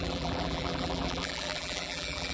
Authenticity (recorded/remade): remade